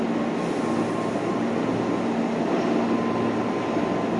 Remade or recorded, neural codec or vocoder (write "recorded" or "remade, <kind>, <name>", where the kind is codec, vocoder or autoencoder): recorded